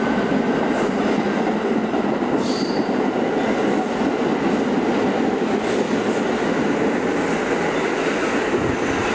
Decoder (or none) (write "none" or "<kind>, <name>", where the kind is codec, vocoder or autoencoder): none